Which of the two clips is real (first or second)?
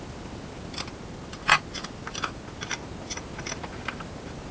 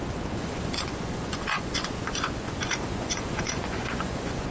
first